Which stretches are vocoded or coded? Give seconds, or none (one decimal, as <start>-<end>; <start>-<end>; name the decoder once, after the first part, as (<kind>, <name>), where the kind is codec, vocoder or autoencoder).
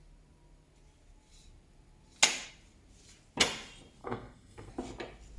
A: 4.0-4.7 (codec, SNAC)